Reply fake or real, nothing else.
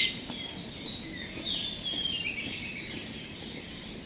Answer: fake